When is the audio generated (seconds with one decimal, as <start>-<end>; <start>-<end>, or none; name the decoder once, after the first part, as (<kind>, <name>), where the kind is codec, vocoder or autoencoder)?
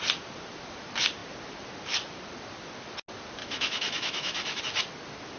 3.4-4.6 (autoencoder, DAC-VAE)